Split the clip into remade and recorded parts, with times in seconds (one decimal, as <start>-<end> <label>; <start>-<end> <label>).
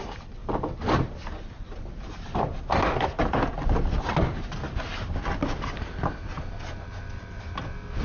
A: 0.0-8.0 recorded